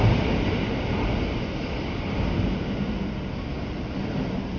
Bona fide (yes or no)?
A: yes